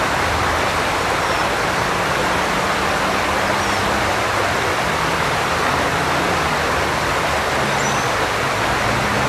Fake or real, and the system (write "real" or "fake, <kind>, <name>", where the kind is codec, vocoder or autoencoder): real